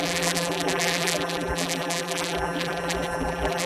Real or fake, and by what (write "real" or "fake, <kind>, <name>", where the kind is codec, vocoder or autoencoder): fake, vocoder, BigVGAN v2